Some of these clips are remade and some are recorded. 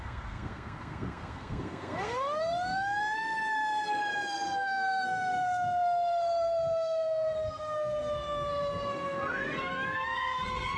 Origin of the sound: remade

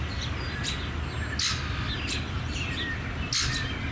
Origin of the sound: recorded